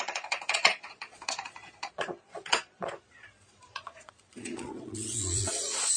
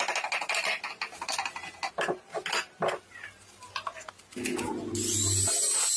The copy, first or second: first